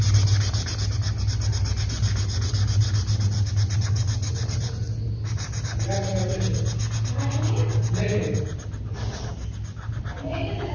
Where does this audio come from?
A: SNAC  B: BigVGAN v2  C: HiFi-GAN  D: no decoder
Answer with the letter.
D